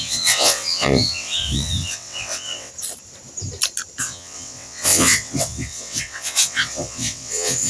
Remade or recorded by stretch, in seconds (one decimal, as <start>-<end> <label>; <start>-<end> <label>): 0.0-2.7 remade; 2.7-4.0 recorded; 4.0-7.7 remade